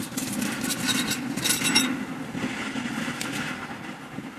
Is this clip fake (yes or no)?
no